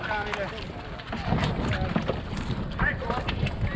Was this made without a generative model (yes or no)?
yes